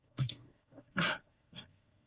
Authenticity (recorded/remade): remade